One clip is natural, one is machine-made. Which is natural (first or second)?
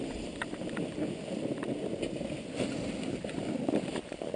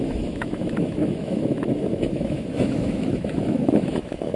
first